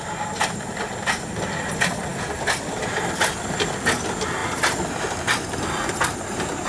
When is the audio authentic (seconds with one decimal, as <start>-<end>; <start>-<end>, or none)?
0.0-6.7

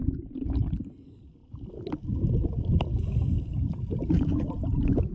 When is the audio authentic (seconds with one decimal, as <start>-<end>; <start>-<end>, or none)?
0.0-5.1

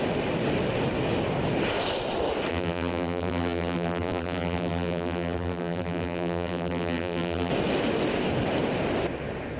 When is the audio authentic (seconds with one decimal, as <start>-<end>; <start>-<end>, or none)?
0.0-2.5; 7.5-9.6